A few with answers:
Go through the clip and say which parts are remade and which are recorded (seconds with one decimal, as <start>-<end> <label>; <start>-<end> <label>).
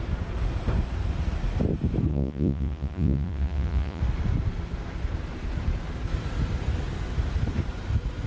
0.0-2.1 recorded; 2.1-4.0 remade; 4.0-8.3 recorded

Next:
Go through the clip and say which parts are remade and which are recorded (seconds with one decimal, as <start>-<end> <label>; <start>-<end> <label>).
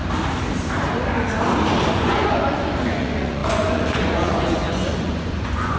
0.0-1.9 recorded; 1.9-5.8 remade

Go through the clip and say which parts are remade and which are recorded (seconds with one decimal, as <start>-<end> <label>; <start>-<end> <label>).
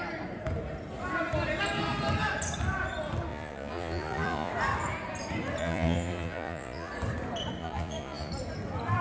0.0-3.3 recorded; 3.3-4.5 remade; 4.5-5.6 recorded; 5.6-6.9 remade; 6.9-7.6 recorded; 7.6-8.3 remade; 8.3-9.0 recorded